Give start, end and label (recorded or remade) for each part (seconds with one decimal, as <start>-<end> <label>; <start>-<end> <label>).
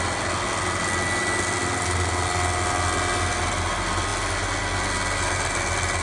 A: 0.0-6.0 recorded